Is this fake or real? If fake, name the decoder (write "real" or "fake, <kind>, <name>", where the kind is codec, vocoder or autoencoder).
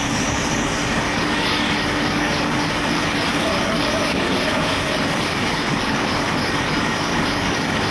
fake, codec, DAC